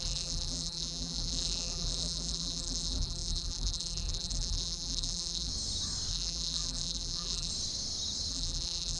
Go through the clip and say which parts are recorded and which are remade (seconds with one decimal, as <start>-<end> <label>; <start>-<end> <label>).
0.0-5.5 remade; 5.5-6.1 recorded; 6.1-7.5 remade; 7.5-8.3 recorded; 8.3-9.0 remade